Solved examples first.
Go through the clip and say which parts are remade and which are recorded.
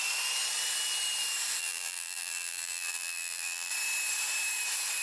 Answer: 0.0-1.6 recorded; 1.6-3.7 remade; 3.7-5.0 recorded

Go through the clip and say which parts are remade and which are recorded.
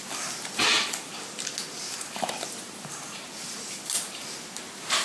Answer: 0.0-1.9 recorded; 1.9-3.3 remade; 3.3-5.0 recorded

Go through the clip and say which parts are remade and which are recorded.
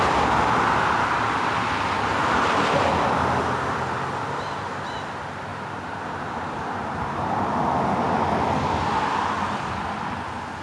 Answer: 0.0-5.5 recorded; 5.5-7.5 remade; 7.5-10.6 recorded